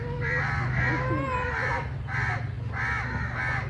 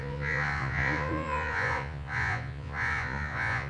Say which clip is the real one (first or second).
first